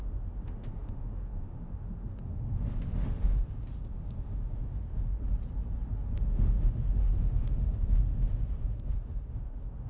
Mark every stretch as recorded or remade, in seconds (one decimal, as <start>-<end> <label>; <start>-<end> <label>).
0.0-5.1 remade; 5.1-6.2 recorded; 6.2-9.9 remade